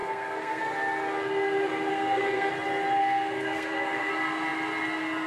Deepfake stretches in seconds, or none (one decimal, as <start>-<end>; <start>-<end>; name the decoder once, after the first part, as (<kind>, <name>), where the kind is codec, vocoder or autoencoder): 0.0-0.6 (codec, SNAC); 1.9-2.5; 3.0-4.1